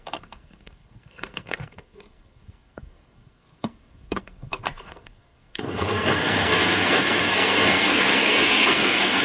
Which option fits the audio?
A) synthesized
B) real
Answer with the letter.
A